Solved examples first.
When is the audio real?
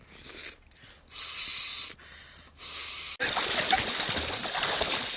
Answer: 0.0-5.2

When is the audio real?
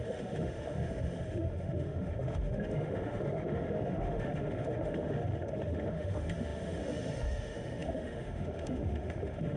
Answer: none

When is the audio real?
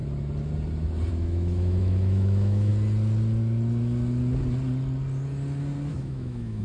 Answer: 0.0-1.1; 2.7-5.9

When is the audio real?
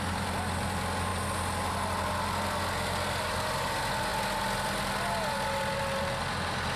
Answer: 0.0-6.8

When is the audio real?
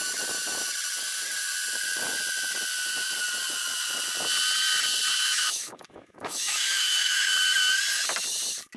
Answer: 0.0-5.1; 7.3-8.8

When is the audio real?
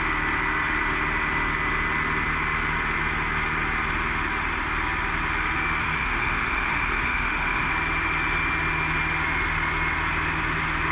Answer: 0.0-5.8; 7.7-10.9